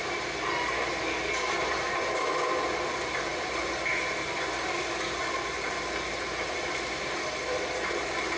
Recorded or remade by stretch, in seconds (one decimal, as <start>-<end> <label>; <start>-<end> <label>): 0.0-3.3 recorded; 3.3-4.1 remade; 4.1-8.4 recorded